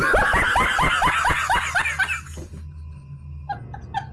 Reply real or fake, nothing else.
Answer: real